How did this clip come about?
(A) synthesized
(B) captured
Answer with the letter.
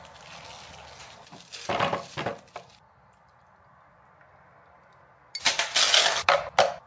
B